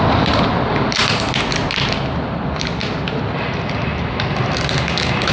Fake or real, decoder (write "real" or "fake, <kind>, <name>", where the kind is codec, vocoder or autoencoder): real